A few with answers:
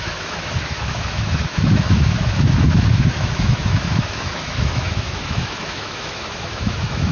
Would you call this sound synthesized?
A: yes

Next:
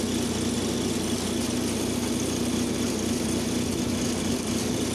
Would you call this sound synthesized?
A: no